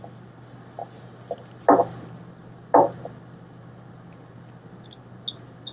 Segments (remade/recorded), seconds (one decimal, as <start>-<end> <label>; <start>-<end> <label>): 0.0-5.7 recorded